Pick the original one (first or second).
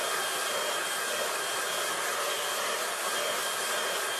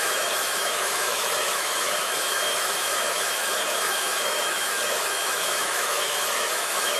first